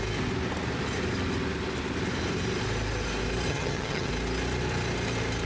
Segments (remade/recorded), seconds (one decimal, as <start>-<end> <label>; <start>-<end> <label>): 0.0-3.5 recorded; 3.5-4.1 remade; 4.1-5.5 recorded